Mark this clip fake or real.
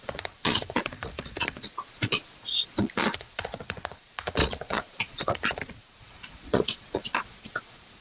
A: fake